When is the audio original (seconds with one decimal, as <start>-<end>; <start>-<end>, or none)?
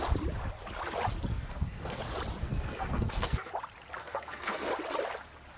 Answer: 0.0-1.3; 2.0-2.4; 3.5-4.0; 4.7-5.6